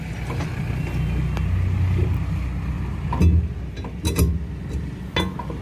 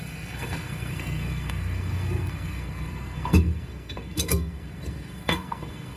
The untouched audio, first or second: first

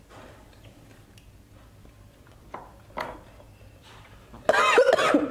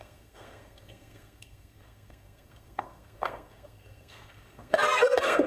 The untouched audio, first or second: first